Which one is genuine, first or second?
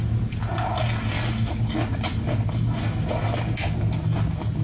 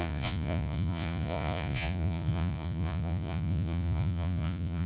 first